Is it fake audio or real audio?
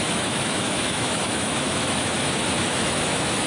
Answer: fake